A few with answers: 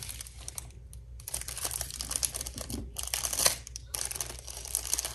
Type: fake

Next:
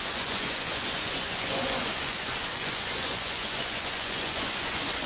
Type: fake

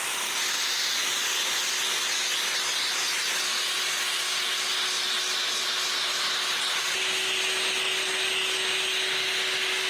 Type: real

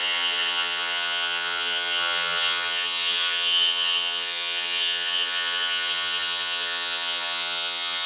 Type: fake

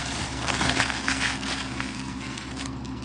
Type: fake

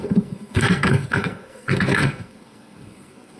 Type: fake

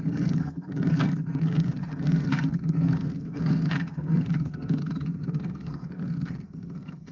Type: fake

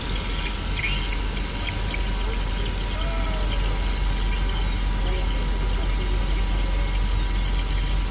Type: real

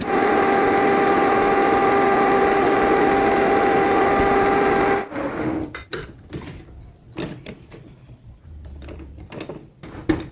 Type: real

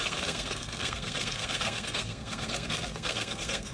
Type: fake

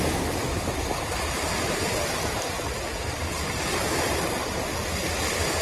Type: real